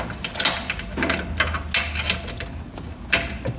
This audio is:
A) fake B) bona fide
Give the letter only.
B